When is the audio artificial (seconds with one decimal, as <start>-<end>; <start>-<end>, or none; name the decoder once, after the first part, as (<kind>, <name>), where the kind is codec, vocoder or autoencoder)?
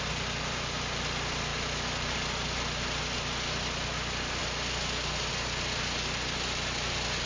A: none